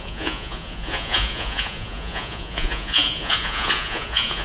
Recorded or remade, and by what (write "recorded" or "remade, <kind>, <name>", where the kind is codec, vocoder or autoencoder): remade, vocoder, Vocos